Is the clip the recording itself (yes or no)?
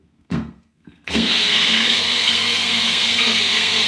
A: no